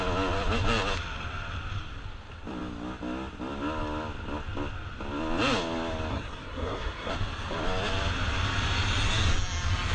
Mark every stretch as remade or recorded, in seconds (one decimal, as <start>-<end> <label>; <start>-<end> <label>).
0.0-6.1 recorded; 6.1-7.1 remade; 7.1-9.9 recorded